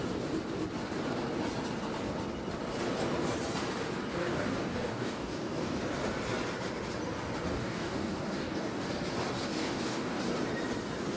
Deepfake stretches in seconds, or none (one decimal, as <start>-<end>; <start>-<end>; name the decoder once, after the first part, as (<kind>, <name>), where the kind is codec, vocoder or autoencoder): 4.2-5.8 (codec, DAC); 7.5-8.9; 9.6-10.2